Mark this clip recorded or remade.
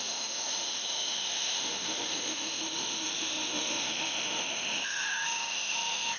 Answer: remade